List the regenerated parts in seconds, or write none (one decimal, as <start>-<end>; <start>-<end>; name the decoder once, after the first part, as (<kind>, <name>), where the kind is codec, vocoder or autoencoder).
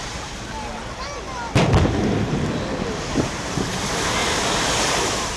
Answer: 0.0-0.8 (vocoder, BigVGAN v2); 3.7-5.4